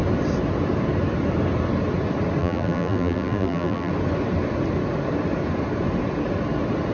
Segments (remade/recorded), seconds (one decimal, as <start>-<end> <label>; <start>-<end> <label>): 0.0-2.4 recorded; 2.4-3.9 remade; 3.9-6.9 recorded